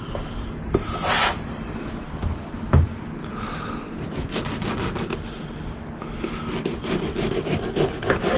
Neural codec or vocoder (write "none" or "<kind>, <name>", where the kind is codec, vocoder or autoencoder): none